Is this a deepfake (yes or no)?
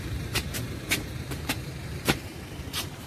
yes